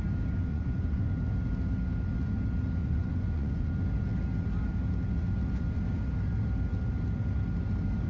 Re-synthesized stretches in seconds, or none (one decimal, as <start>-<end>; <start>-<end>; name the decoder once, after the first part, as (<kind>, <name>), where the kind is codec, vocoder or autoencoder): 0.5-1.1 (vocoder, Vocos); 2.8-3.7